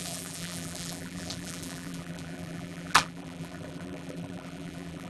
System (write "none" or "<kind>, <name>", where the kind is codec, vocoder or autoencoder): vocoder, BigVGAN v2